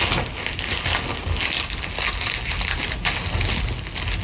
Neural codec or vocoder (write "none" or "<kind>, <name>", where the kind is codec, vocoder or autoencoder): none